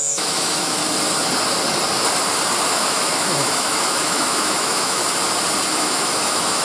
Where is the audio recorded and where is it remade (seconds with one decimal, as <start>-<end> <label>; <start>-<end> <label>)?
0.0-0.8 remade; 0.8-2.7 recorded; 2.7-5.0 remade; 5.0-5.7 recorded; 5.7-6.6 remade